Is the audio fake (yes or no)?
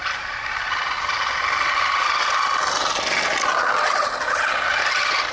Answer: no